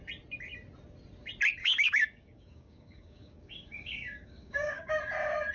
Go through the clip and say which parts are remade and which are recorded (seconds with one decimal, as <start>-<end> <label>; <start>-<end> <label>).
0.0-1.6 recorded; 1.6-4.9 remade; 4.9-5.5 recorded